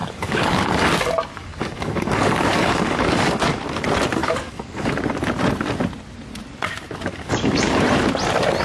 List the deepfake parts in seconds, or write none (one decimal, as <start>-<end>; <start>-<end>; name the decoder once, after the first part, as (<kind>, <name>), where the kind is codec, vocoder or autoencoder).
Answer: 0.0-0.9 (codec, DAC); 1.4-3.6; 4.2-4.9; 7.1-7.8